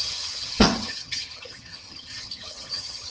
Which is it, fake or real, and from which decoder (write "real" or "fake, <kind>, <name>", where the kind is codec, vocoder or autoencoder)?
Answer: fake, vocoder, HiFi-GAN